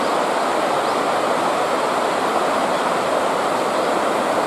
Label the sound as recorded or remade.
recorded